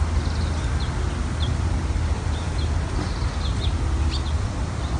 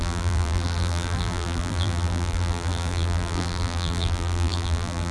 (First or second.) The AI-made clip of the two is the second